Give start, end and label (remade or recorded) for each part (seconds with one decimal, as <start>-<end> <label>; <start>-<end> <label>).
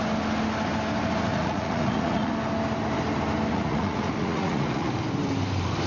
0.0-1.3 recorded; 1.3-2.3 remade; 2.3-3.5 recorded; 3.5-4.9 remade; 4.9-5.9 recorded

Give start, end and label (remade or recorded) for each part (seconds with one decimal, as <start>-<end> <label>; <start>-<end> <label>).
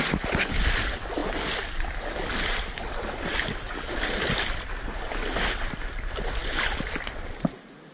0.0-7.9 recorded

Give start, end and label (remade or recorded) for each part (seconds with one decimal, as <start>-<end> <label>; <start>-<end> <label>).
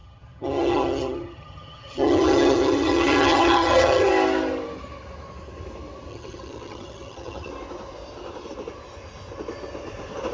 0.0-4.1 remade; 4.1-6.1 recorded; 6.1-7.5 remade; 7.5-10.3 recorded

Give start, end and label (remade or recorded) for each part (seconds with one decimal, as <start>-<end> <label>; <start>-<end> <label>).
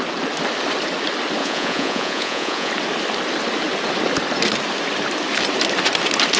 0.0-1.4 recorded; 1.4-2.7 remade; 2.7-6.4 recorded